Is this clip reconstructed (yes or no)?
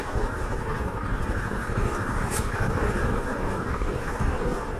yes